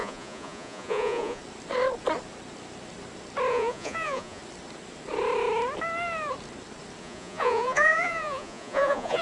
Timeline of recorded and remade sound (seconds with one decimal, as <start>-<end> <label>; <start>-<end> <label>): 0.0-1.4 remade; 1.4-3.5 recorded; 3.5-4.4 remade; 4.4-7.0 recorded; 7.0-9.2 remade